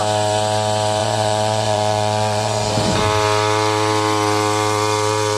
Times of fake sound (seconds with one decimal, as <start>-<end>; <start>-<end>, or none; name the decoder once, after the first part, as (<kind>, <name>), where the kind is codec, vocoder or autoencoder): 1.0-3.0 (vocoder, Vocos)